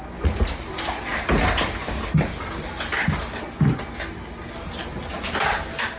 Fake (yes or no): no